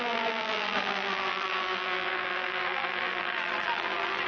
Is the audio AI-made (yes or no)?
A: yes